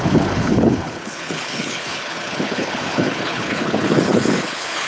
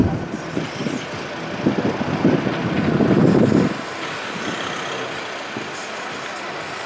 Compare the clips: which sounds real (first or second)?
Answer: second